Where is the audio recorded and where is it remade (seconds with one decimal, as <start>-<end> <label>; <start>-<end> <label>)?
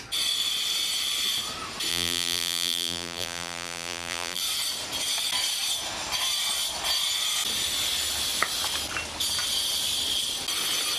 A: 0.0-1.9 recorded; 1.9-4.4 remade; 4.4-11.0 recorded